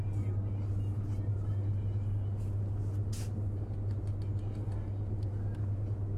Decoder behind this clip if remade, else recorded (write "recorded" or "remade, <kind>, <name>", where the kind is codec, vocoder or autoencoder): recorded